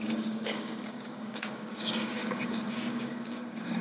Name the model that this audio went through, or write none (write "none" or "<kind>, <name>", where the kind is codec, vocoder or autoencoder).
codec, DAC